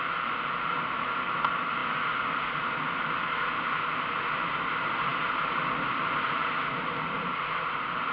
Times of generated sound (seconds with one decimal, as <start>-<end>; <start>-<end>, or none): none